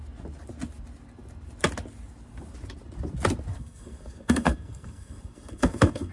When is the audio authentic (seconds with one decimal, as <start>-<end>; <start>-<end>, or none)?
0.0-3.5